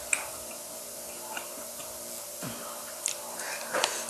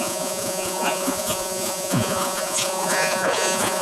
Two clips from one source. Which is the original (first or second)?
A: first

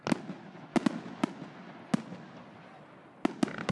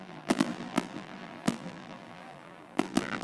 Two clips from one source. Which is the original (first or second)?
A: first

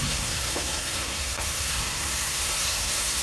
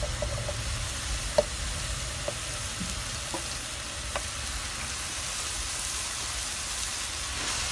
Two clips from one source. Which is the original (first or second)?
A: second